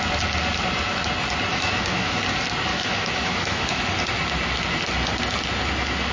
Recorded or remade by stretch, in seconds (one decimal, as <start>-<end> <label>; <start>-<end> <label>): 0.0-1.5 recorded; 1.5-2.2 remade; 2.2-2.7 recorded; 2.7-3.8 remade; 3.8-6.1 recorded